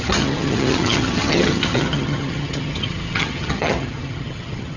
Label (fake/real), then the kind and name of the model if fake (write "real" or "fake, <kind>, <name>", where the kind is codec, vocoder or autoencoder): fake, vocoder, HiFi-GAN